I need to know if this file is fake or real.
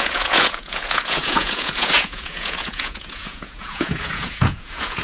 fake